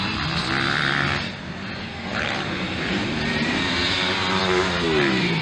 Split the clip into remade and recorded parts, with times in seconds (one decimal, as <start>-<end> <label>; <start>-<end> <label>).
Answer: 0.0-2.1 recorded; 2.1-4.4 remade; 4.4-5.4 recorded